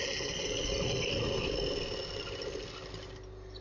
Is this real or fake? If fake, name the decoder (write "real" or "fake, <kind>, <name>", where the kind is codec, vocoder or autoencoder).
real